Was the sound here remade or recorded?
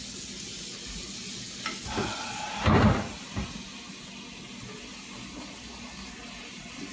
recorded